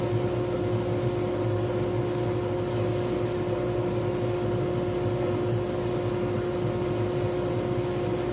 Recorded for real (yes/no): yes